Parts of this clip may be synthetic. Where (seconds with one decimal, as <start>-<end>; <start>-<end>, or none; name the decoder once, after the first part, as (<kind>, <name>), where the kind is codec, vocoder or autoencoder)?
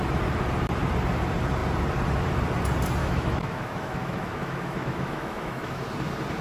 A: 3.0-5.8 (autoencoder, DAC-VAE)